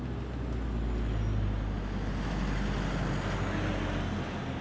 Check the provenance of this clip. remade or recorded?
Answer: recorded